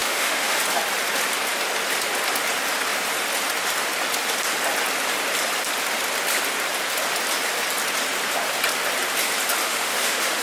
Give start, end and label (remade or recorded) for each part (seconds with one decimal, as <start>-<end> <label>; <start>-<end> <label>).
0.0-0.6 remade; 0.6-9.6 recorded; 9.6-10.4 remade